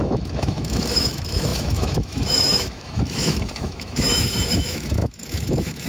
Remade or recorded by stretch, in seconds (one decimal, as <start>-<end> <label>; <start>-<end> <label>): 0.0-5.9 remade